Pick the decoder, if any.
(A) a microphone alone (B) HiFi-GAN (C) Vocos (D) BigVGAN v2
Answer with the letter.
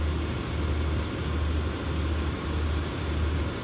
A